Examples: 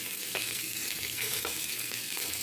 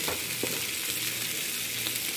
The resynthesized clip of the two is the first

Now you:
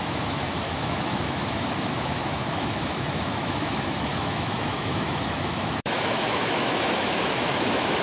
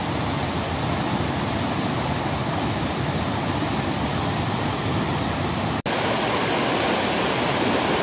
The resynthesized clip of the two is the first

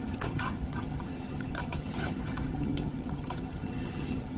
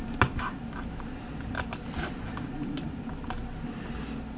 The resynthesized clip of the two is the first